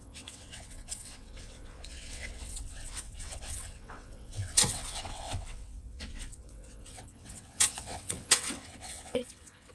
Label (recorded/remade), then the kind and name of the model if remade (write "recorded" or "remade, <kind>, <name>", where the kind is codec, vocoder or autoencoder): remade, vocoder, WaveNeXt